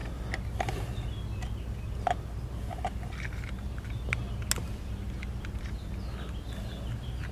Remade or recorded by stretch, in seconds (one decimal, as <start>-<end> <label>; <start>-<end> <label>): 0.0-7.3 recorded